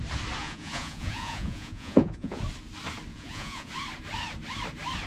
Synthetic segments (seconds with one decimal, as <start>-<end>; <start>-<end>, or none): 0.4-2.4; 3.1-3.7